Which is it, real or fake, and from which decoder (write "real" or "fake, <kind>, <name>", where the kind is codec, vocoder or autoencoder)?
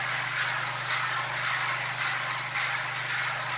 real